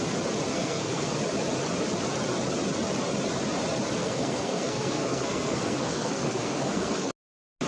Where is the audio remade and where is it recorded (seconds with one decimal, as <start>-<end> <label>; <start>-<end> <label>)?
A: 0.0-0.5 recorded; 0.5-1.2 remade; 1.2-4.0 recorded; 4.0-7.1 remade; 7.1-7.7 recorded